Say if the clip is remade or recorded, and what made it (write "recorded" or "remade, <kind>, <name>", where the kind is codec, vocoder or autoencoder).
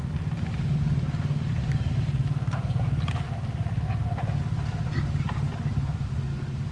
recorded